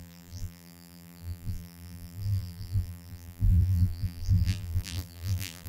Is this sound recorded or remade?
remade